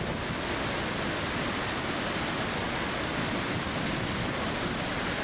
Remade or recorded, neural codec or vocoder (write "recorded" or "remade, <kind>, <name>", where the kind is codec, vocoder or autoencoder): recorded